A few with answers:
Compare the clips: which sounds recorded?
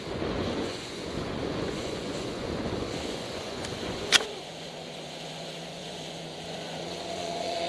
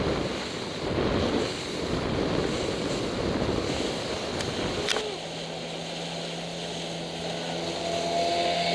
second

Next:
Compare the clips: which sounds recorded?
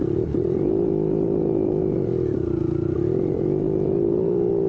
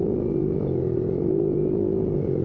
first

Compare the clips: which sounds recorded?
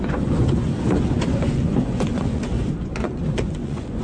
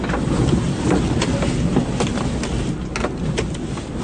second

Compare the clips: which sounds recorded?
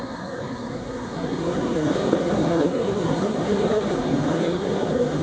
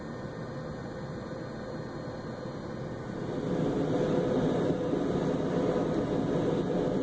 second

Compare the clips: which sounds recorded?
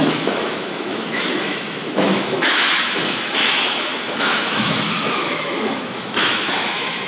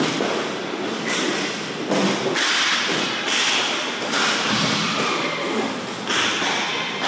second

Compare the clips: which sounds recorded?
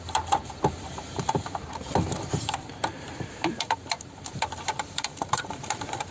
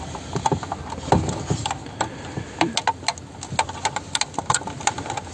second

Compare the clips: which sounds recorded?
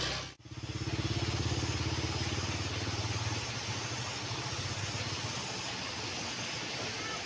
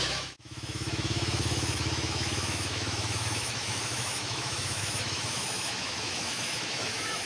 first